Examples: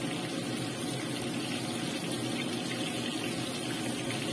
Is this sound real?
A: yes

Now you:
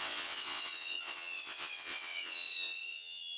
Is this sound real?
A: no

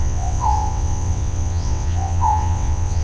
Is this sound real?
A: no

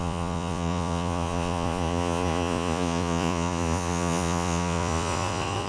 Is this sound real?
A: no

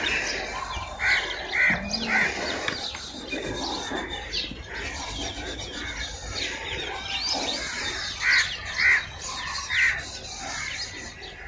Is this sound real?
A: yes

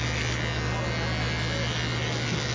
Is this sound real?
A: yes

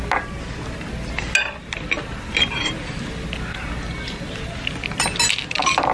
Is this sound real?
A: yes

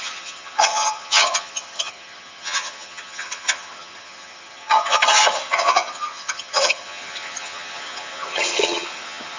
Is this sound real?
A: no